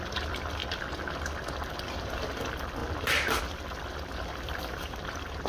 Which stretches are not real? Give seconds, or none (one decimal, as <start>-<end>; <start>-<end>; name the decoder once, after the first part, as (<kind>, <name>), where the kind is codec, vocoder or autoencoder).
0.0-0.6 (vocoder, BigVGAN v2); 1.7-2.8; 3.4-5.5